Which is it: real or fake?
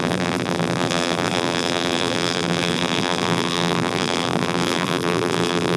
fake